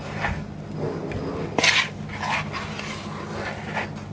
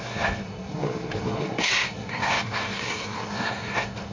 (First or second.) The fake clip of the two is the second